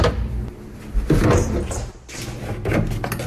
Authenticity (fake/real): real